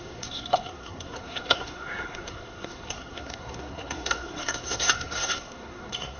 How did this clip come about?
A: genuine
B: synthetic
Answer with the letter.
B